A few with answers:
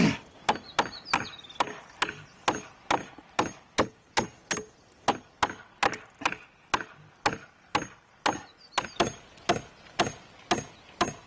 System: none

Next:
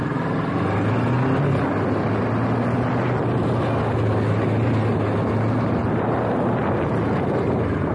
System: none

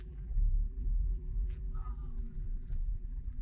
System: vocoder, BigVGAN v2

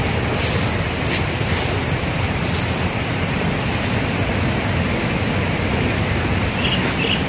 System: none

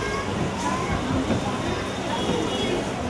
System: none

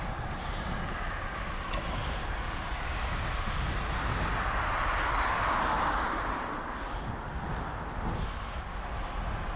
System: none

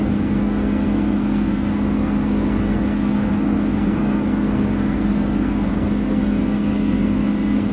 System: codec, SNAC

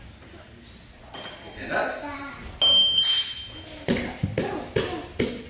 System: none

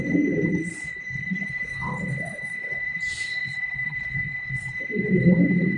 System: codec, HILCodec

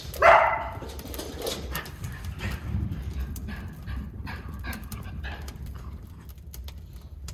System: vocoder, BigVGAN v2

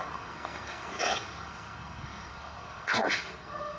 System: codec, SNAC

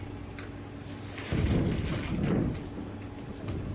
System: none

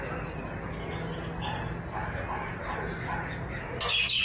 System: none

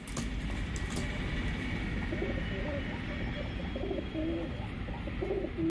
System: none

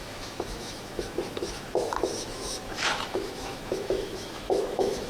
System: autoencoder, DAC-VAE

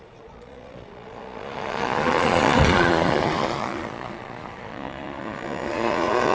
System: vocoder, Vocos